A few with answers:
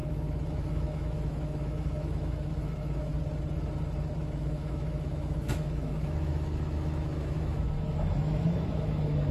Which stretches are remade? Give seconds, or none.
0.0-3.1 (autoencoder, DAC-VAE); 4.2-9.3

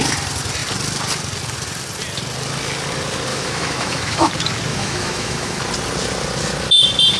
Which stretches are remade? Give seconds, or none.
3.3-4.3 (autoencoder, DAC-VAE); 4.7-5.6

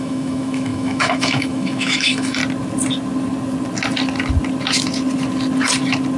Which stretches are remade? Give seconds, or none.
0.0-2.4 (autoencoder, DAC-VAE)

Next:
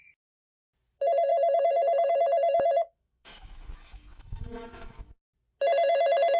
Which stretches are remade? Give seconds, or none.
1.3-5.1 (autoencoder, DAC-VAE)

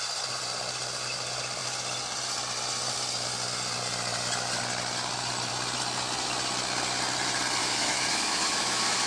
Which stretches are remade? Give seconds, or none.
7.6-9.1 (autoencoder, DAC-VAE)

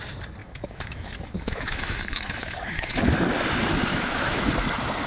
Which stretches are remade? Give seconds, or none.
0.4-3.0 (autoencoder, DAC-VAE); 3.9-4.5

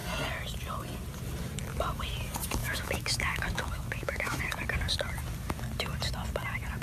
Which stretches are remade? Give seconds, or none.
2.6-4.4 (autoencoder, DAC-VAE)